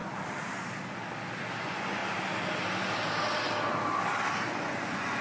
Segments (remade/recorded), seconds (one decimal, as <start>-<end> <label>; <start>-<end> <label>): 0.0-1.6 recorded; 1.6-2.0 remade; 2.0-4.5 recorded; 4.5-5.2 remade

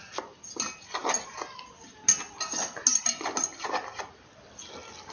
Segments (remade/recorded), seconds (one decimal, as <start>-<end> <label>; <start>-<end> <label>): 0.0-5.1 recorded

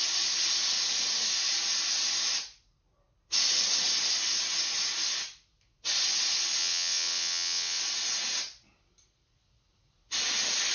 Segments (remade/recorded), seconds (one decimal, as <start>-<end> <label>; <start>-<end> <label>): 0.0-6.6 recorded; 6.6-7.8 remade; 7.8-10.7 recorded

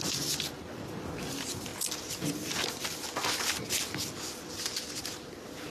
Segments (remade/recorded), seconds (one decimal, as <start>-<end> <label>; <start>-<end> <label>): 0.0-1.7 remade; 1.7-4.6 recorded; 4.6-5.7 remade

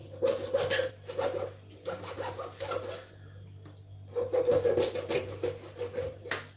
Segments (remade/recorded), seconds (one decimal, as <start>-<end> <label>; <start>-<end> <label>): 0.0-6.6 recorded